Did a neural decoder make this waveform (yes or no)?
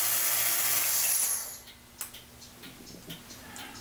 no